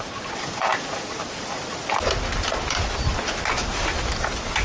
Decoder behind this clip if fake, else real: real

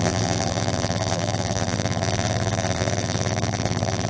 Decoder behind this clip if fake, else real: fake, vocoder, BigVGAN v2